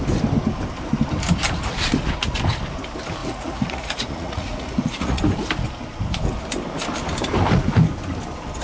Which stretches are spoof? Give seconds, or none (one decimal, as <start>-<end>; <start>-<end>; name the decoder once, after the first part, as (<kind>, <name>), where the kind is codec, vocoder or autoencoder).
3.2-5.2 (vocoder, Vocos)